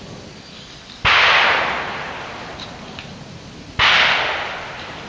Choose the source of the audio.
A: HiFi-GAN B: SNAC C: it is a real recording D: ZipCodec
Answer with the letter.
C